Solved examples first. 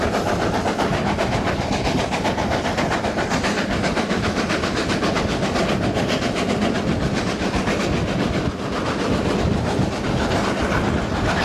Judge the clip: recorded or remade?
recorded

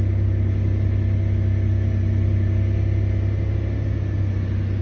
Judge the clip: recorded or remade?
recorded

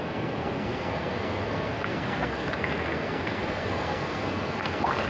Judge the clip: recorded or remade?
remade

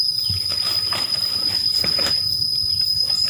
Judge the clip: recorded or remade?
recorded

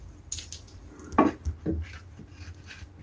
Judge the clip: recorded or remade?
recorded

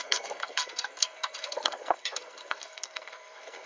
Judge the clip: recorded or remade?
remade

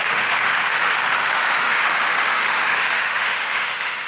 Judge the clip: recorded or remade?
remade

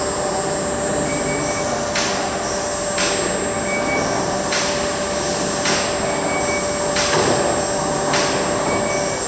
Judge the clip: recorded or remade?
recorded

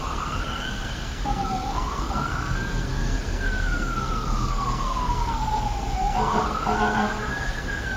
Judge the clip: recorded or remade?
remade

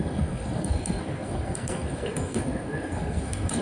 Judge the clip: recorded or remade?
remade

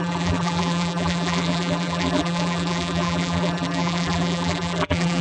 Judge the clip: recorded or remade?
remade